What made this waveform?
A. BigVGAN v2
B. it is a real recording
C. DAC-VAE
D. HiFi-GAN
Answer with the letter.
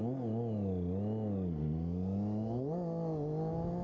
B